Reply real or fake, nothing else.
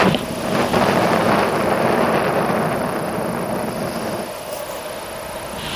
real